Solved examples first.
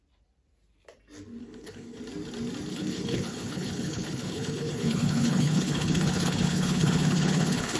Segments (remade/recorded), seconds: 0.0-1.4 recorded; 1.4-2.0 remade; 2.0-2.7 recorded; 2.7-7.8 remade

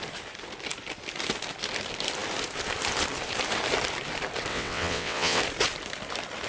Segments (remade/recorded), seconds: 0.0-4.5 recorded; 4.5-5.4 remade; 5.4-6.5 recorded

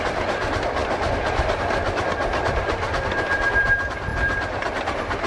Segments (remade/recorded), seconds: 0.0-0.8 recorded; 0.8-1.3 remade; 1.3-4.1 recorded; 4.1-4.7 remade; 4.7-5.3 recorded

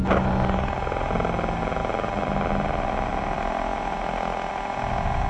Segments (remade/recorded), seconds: 0.0-5.3 recorded

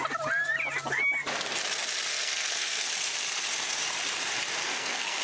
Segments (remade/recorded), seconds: 0.0-2.1 recorded; 2.1-2.9 remade; 2.9-4.6 recorded; 4.6-5.2 remade